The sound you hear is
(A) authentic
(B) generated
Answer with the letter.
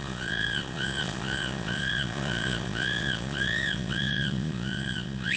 B